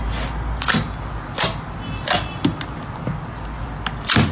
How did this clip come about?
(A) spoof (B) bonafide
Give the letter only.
B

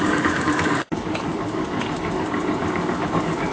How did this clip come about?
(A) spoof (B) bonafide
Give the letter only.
A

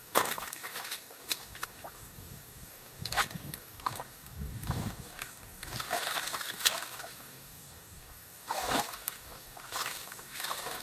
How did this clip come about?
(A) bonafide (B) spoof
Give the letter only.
B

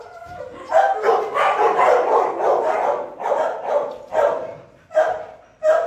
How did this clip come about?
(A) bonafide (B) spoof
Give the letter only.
A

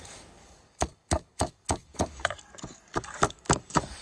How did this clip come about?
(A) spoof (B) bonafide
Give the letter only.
A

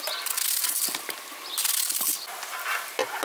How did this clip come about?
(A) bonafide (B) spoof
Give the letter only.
A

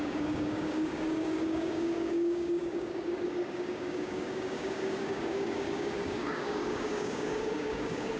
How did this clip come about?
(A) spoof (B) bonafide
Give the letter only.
A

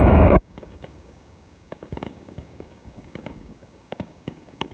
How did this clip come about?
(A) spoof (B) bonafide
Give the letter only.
A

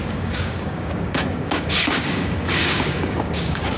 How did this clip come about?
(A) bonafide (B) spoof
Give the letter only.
B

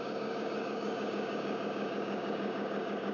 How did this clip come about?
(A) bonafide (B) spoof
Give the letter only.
B